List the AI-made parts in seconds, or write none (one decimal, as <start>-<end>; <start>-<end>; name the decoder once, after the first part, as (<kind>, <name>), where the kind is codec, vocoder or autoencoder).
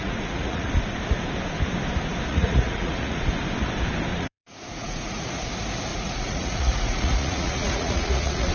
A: 0.0-0.7 (vocoder, Vocos); 2.3-3.2; 4.1-5.5; 5.9-8.5